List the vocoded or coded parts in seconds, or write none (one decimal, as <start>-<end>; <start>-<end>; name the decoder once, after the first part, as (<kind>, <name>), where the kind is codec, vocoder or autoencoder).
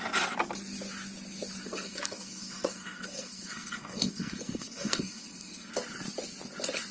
1.6-5.7 (codec, SNAC)